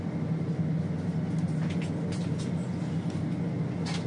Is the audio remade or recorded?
recorded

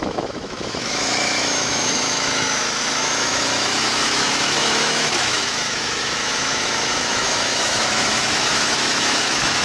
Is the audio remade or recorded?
remade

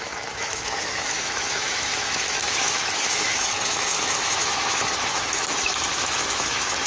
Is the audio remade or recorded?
remade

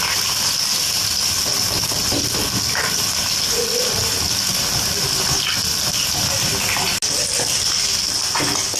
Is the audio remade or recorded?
recorded